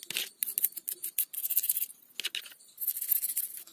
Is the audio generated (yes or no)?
no